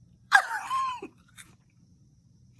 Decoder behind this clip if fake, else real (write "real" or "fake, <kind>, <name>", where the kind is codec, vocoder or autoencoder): fake, vocoder, BigVGAN v2